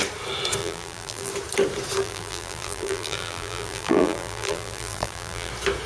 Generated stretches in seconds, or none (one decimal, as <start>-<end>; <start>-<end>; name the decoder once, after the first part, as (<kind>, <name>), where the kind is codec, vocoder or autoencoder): 0.6-1.3 (vocoder, BigVGAN v2); 2.0-5.5